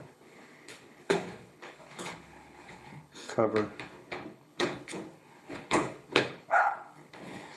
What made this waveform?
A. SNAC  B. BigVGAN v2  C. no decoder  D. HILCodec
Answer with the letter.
D